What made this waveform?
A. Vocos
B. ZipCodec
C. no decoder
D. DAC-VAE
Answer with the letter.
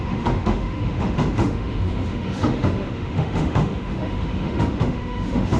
D